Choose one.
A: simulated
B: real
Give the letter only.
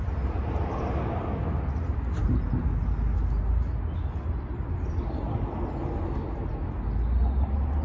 B